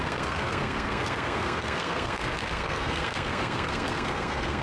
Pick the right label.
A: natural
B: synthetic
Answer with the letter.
B